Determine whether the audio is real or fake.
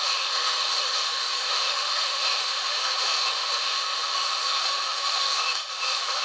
fake